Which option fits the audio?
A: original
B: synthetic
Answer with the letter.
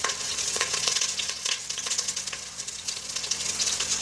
B